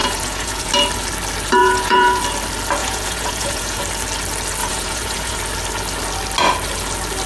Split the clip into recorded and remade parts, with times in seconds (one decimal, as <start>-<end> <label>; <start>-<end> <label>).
0.0-0.7 remade; 0.7-1.6 recorded; 1.6-2.2 remade; 2.2-2.8 recorded; 2.8-3.8 remade; 3.8-4.6 recorded; 4.6-5.4 remade; 5.4-7.3 recorded